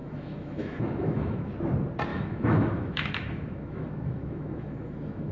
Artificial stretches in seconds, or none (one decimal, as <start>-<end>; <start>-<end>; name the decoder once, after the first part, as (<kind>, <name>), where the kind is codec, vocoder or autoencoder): 0.0-1.5 (autoencoder, DAC-VAE); 2.1-5.3